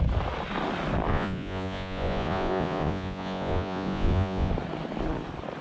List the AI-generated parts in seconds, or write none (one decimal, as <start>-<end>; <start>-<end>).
1.1-4.5